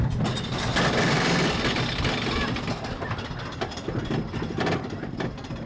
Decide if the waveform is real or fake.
real